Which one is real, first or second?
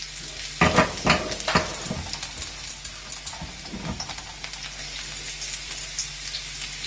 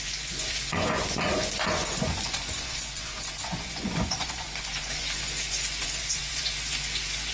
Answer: first